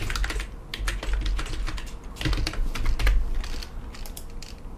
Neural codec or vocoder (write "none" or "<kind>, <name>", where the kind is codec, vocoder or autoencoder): none